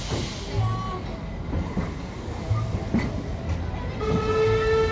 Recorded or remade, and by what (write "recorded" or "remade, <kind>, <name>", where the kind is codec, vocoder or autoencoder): recorded